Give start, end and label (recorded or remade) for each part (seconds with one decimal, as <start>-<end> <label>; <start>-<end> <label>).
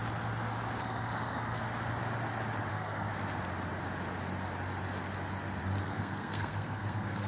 0.0-0.8 recorded; 0.8-1.6 remade; 1.6-2.7 recorded; 2.7-3.1 remade; 3.1-5.8 recorded; 5.8-7.3 remade